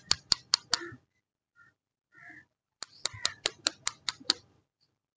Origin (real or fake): fake